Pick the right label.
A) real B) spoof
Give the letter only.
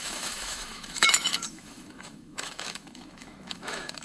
B